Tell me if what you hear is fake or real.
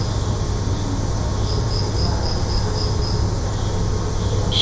real